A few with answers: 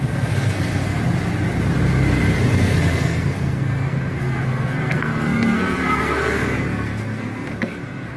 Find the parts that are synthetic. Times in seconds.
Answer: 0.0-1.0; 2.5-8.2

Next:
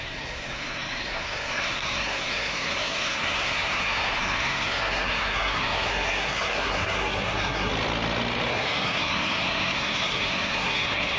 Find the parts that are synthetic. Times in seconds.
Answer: 0.0-7.7; 8.5-11.2